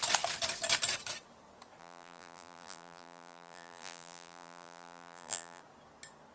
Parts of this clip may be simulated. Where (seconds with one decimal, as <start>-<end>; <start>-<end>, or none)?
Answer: 1.8-5.6